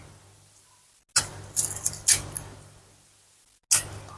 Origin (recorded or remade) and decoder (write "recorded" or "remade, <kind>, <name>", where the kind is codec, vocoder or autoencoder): recorded